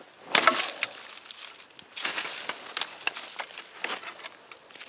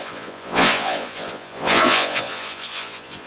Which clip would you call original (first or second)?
first